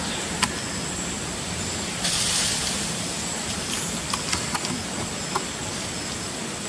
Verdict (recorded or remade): recorded